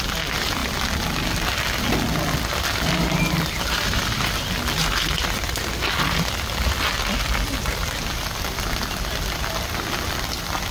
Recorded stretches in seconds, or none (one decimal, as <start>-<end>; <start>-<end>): 0.0-10.7